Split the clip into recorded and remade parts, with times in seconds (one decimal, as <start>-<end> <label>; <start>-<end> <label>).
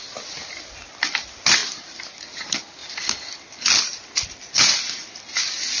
0.0-5.8 recorded